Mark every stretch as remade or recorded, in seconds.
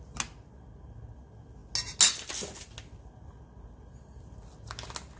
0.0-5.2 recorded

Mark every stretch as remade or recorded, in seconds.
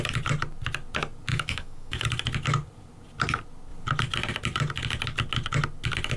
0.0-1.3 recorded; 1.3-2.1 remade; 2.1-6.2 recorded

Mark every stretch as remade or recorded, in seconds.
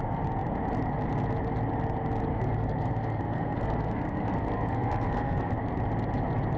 0.0-2.3 recorded; 2.3-5.5 remade; 5.5-6.6 recorded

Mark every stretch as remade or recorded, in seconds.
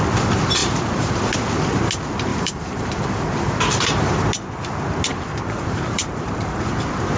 0.0-0.6 recorded; 0.6-1.2 remade; 1.2-2.3 recorded; 2.3-4.1 remade; 4.1-5.1 recorded; 5.1-6.6 remade; 6.6-7.2 recorded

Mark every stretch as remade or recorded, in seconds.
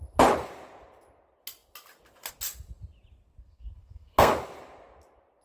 0.0-3.4 recorded; 3.4-4.3 remade; 4.3-5.4 recorded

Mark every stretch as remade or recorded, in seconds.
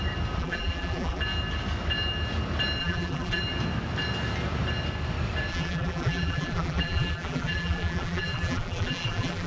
0.0-0.4 recorded; 0.4-1.2 remade; 1.2-2.8 recorded; 2.8-3.4 remade; 3.4-5.5 recorded; 5.5-9.5 remade